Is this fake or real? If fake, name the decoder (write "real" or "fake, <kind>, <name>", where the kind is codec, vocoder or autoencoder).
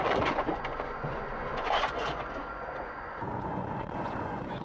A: fake, vocoder, Vocos